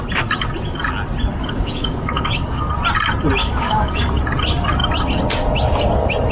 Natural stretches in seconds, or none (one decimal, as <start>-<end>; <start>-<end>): 0.0-1.4; 2.7-3.4; 4.1-6.3